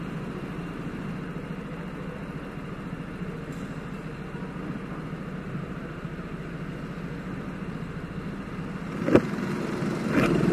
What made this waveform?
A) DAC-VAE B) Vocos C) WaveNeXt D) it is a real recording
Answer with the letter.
D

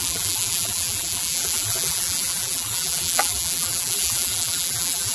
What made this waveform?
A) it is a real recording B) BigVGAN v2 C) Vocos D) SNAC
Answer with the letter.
B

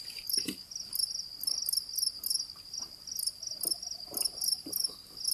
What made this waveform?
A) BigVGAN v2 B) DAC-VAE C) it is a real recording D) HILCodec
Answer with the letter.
C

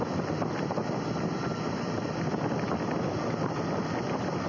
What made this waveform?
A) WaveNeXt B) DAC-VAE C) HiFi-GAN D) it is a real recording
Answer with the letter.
D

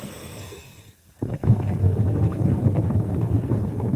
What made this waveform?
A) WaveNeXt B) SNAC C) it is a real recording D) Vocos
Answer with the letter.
B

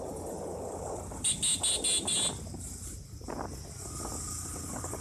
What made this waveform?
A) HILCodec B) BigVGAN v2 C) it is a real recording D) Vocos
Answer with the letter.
C